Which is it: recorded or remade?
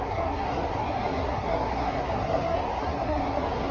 remade